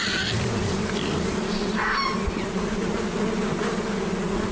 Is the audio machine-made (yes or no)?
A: no